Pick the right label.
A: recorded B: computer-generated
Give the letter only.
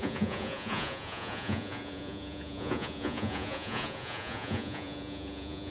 B